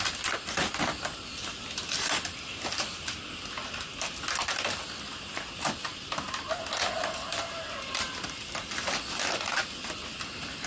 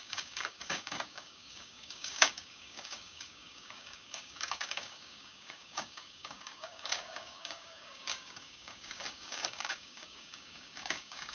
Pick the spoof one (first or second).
second